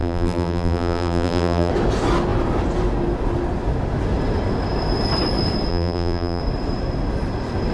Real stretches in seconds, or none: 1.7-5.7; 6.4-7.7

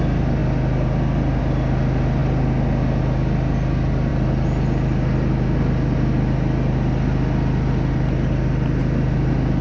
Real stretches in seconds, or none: 0.0-9.6

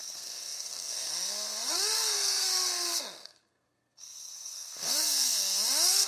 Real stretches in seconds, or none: none